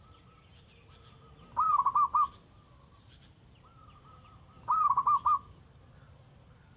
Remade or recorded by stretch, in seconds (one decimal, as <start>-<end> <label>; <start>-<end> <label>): 0.0-6.8 recorded

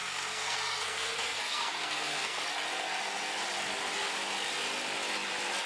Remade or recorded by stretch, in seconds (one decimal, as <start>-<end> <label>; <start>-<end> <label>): 0.0-2.4 remade; 2.4-5.7 recorded

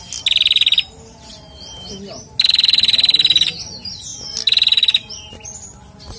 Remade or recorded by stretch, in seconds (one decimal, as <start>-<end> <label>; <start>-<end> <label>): 0.0-6.2 recorded

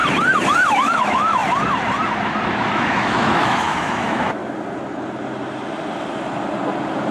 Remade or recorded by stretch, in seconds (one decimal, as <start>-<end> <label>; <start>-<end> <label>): 0.0-0.7 recorded; 0.7-1.4 remade; 1.4-2.5 recorded; 2.5-4.4 remade; 4.4-7.1 recorded

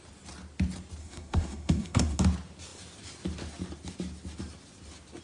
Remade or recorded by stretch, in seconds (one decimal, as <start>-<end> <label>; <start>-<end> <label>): 0.0-1.0 recorded; 1.0-2.2 remade; 2.2-5.2 recorded

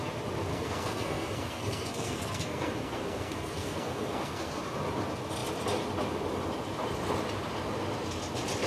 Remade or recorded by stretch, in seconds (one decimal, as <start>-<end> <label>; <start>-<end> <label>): 0.0-0.5 recorded; 0.5-4.6 remade; 4.6-8.7 recorded

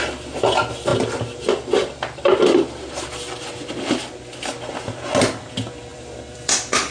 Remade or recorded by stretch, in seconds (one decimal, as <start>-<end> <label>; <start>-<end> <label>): 0.0-5.9 recorded; 5.9-6.9 remade